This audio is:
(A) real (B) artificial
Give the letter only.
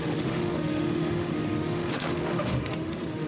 B